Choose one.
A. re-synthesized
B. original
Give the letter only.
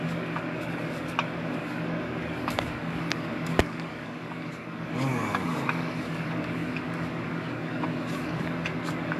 A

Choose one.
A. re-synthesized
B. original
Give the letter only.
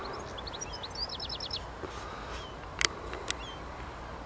B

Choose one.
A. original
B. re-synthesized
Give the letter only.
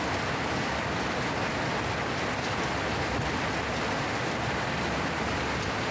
A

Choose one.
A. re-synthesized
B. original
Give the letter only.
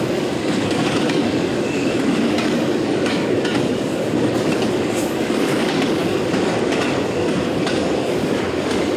A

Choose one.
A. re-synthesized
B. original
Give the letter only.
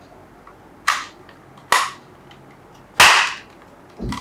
B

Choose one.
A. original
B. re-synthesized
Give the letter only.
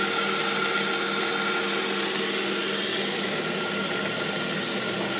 A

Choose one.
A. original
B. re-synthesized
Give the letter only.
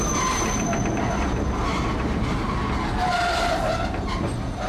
A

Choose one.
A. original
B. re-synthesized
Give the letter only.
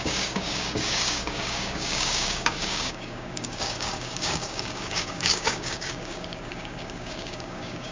B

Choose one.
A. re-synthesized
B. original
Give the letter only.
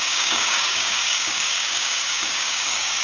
A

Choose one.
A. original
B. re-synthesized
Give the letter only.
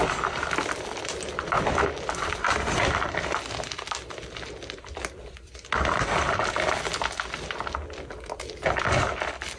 A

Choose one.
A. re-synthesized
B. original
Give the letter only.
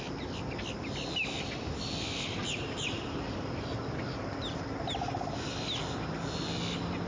B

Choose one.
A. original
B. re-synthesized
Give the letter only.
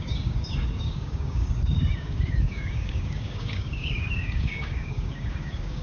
B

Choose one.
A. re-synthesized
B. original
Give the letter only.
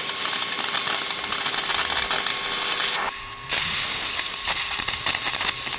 B